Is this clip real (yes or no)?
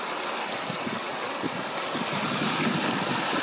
yes